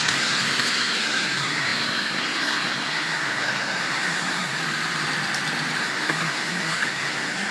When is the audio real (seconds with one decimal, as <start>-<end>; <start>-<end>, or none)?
4.6-5.8